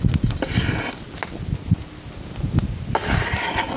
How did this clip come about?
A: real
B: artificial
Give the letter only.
A